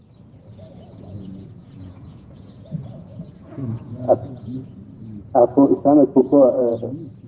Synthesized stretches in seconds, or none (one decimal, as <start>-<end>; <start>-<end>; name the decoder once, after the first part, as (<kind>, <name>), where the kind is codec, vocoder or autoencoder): 0.9-5.3 (vocoder, Vocos); 6.2-6.8